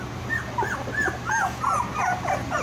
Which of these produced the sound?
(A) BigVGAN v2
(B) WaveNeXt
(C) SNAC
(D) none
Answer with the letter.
D